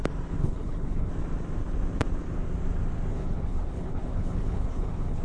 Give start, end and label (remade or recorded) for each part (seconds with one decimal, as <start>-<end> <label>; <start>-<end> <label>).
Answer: 0.0-0.4 recorded; 0.4-1.1 remade; 1.1-3.1 recorded; 3.1-5.2 remade